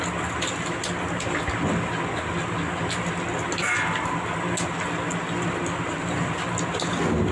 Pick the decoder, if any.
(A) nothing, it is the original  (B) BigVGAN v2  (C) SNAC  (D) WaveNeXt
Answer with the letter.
A